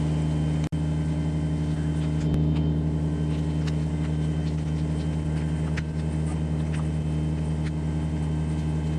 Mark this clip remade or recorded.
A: recorded